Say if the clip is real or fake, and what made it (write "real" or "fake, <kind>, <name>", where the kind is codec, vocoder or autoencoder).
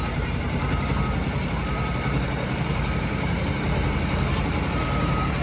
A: fake, vocoder, BigVGAN v2